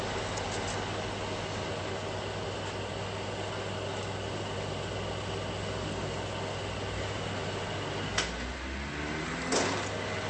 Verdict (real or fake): real